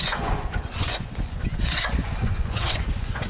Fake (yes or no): yes